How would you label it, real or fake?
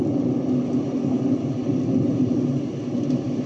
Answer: real